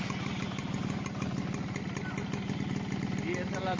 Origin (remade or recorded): recorded